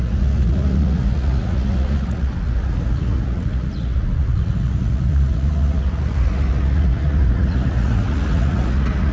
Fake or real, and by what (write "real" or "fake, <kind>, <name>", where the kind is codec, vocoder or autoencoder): fake, vocoder, Vocos